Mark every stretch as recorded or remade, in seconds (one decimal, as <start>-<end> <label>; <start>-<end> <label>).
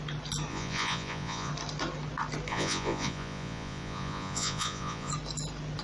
0.0-0.5 recorded; 0.5-1.5 remade; 1.5-2.5 recorded; 2.5-5.1 remade; 5.1-5.8 recorded